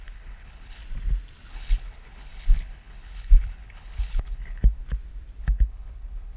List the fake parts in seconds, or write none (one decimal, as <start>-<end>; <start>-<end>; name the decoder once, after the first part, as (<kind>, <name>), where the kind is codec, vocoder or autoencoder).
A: 0.0-0.8 (codec, HILCodec); 1.5-4.8; 5.4-6.4